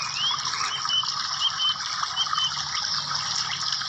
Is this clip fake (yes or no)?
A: no